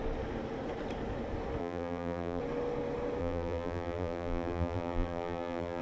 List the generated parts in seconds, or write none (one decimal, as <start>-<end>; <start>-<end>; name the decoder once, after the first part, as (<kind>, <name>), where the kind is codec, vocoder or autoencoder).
1.6-2.4 (vocoder, BigVGAN v2); 3.2-5.8